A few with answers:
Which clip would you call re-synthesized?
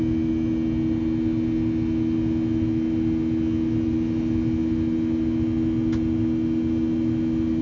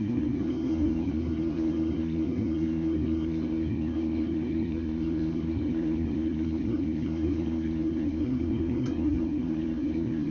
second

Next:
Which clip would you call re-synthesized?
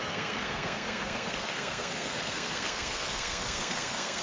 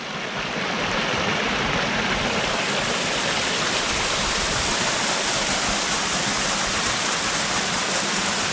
first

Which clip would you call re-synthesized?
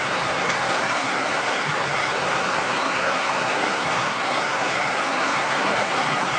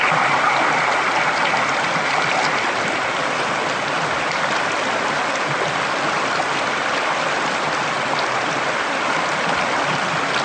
first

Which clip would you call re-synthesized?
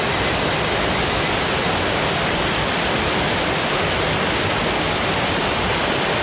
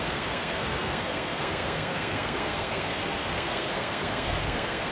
second